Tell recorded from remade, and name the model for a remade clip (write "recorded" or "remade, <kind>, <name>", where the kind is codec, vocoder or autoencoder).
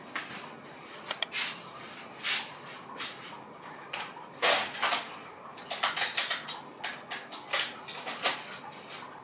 recorded